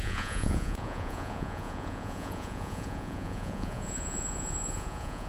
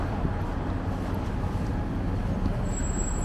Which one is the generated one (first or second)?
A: first